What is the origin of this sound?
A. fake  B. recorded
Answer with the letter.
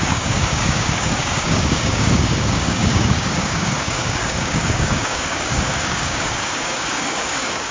A